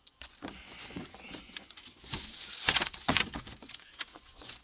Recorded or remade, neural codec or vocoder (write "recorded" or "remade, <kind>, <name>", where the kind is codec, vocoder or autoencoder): remade, vocoder, Vocos